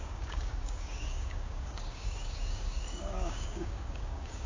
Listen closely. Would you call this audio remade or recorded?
remade